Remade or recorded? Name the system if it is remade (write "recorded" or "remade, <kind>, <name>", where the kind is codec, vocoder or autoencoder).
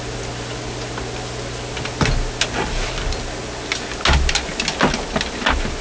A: recorded